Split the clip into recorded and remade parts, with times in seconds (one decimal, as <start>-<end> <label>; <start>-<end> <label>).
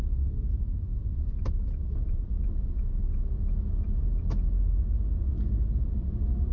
0.0-6.5 recorded